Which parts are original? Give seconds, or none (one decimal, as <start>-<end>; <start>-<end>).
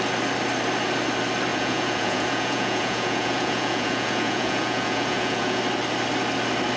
0.0-1.5; 5.6-6.8